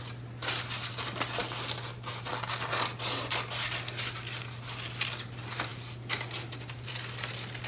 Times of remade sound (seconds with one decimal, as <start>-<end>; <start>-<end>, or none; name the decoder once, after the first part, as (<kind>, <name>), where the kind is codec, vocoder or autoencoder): none